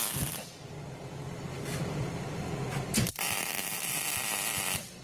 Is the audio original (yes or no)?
yes